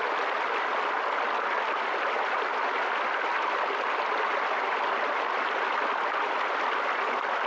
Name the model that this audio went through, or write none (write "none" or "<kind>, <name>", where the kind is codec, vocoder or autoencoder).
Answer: none